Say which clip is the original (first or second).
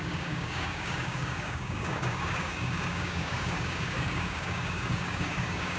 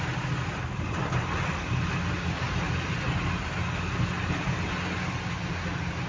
second